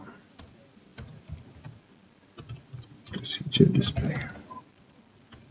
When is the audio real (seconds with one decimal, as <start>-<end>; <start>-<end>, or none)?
0.0-5.5